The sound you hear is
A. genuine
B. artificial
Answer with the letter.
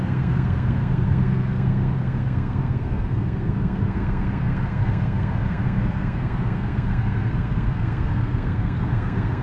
B